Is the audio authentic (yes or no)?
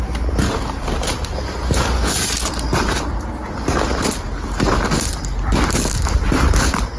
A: yes